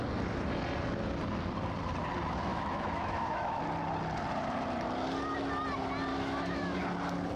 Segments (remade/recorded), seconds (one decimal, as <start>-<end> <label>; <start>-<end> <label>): 0.0-2.5 recorded; 2.5-3.6 remade; 3.6-6.1 recorded; 6.1-6.8 remade; 6.8-7.4 recorded